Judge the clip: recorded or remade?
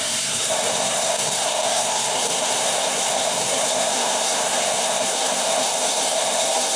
remade